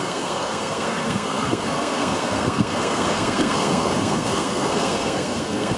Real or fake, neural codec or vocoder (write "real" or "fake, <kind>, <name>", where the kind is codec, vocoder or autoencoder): fake, codec, SNAC